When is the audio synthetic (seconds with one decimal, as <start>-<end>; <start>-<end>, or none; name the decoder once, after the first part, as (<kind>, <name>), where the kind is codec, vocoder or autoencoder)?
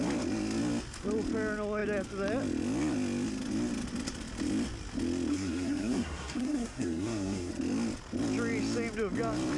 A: 5.3-7.5 (codec, SNAC)